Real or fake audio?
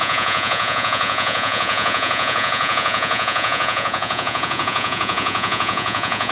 fake